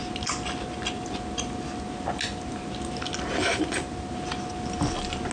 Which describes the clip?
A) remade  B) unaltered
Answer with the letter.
B